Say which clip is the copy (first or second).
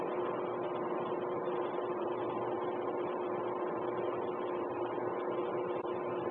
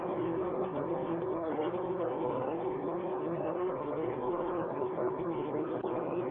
second